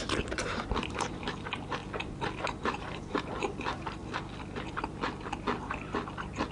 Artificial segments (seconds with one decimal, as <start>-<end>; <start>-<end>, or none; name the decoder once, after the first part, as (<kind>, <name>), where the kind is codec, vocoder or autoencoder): 0.0-1.8 (vocoder, BigVGAN v2); 2.6-4.0